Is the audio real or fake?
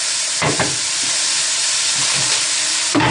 fake